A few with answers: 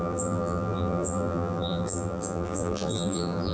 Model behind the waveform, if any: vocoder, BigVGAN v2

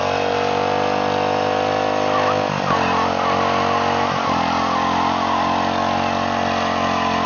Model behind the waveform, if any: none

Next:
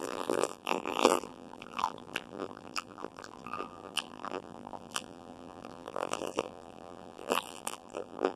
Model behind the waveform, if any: vocoder, BigVGAN v2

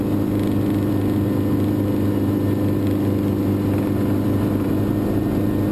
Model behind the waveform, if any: none